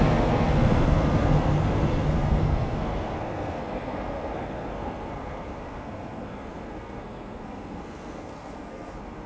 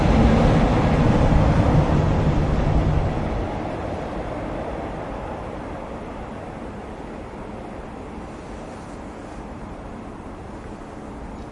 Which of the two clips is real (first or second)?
second